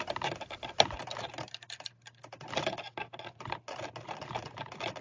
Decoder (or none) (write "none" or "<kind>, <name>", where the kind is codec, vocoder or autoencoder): none